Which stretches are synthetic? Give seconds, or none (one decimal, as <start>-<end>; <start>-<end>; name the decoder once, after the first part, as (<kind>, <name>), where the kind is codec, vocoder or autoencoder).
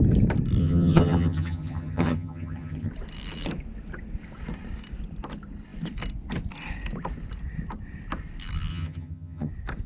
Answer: 0.6-2.9 (vocoder, HiFi-GAN); 8.7-9.5